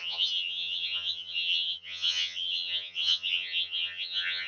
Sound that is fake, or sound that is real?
fake